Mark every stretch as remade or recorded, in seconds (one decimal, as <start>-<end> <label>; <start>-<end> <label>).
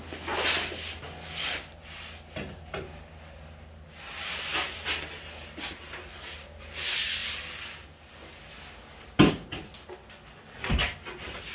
0.0-11.5 recorded